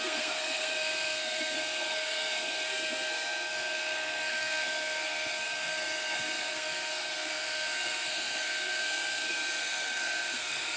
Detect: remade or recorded remade